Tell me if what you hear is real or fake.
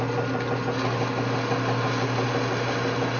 real